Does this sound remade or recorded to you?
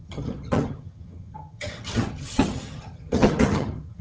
remade